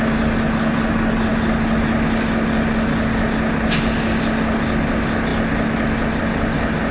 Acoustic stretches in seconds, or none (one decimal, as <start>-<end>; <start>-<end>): 0.0-6.9